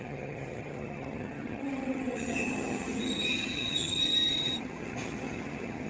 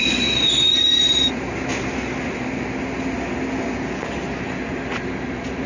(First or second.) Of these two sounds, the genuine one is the second